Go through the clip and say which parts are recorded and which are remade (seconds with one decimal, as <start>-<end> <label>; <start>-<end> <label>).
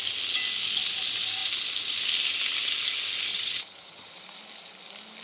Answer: 0.0-3.3 recorded; 3.3-4.1 remade; 4.1-5.2 recorded